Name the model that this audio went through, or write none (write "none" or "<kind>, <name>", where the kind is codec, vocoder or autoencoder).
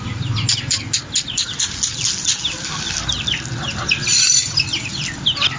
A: none